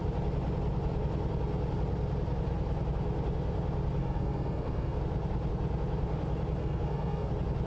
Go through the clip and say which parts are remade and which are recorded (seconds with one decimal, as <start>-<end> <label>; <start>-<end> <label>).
0.0-4.0 recorded; 4.0-5.0 remade; 5.0-6.6 recorded; 6.6-7.3 remade; 7.3-7.7 recorded